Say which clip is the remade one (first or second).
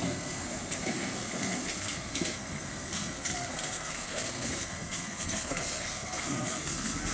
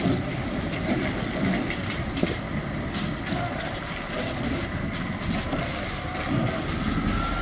first